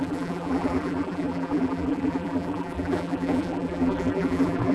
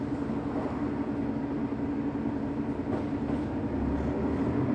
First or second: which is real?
second